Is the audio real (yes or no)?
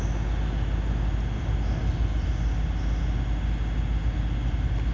yes